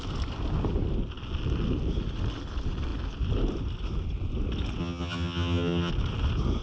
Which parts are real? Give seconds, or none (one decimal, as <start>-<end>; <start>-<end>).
0.0-4.8; 5.9-6.6